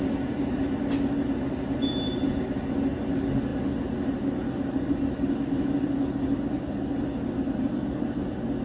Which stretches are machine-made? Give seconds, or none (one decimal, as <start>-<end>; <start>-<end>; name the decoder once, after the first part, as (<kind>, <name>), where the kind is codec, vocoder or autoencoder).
none